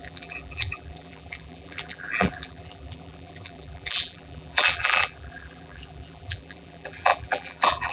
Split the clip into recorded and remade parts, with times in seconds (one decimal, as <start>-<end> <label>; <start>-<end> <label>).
0.0-7.9 remade